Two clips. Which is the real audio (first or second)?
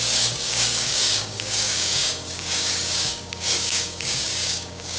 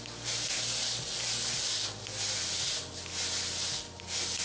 second